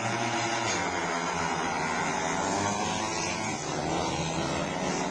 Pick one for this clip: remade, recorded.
recorded